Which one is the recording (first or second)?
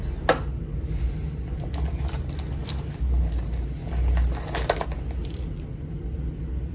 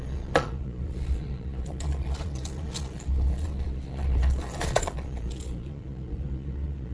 first